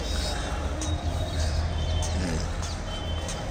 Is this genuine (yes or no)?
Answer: yes